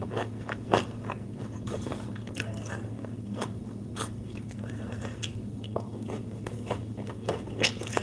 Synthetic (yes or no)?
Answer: yes